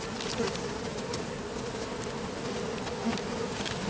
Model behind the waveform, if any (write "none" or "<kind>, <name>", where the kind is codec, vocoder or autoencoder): none